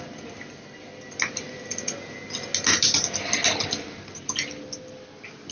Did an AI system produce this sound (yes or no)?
no